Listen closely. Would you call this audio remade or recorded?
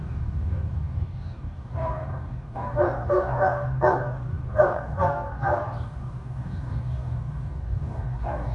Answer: remade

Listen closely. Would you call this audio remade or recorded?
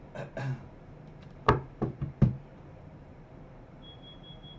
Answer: remade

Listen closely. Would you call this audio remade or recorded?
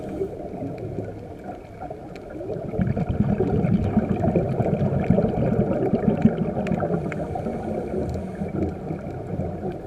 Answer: recorded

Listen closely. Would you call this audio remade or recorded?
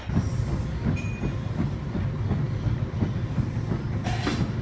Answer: recorded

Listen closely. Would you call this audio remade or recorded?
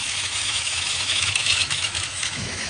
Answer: remade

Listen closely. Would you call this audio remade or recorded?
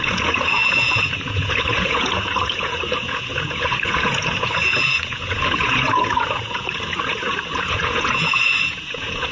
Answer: remade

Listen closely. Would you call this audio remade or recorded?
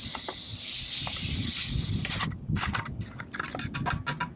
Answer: recorded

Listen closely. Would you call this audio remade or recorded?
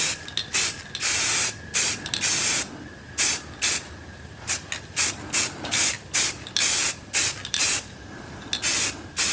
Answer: recorded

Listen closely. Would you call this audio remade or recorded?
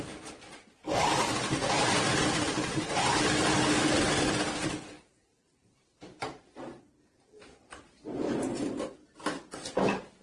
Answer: remade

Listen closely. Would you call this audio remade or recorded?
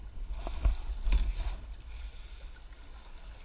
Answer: recorded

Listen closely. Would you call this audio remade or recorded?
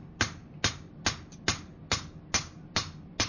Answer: recorded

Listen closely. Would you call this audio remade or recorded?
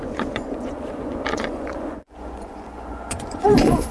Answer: remade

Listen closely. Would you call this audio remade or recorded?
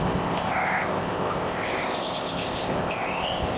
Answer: remade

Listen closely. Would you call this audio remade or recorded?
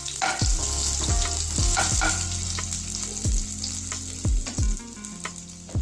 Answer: recorded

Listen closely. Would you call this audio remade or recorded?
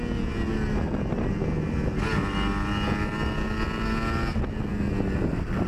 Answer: recorded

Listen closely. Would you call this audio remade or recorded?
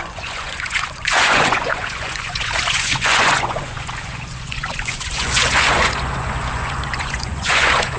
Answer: remade